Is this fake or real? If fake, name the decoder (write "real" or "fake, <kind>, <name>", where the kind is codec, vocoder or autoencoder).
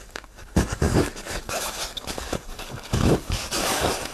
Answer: fake, codec, DAC